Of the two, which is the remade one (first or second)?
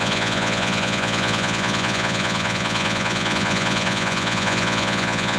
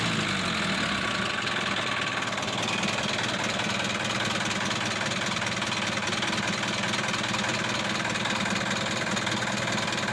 first